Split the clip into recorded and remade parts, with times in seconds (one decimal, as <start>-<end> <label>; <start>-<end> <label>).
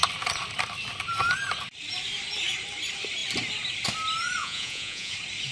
0.0-4.4 recorded; 4.4-5.1 remade; 5.1-5.5 recorded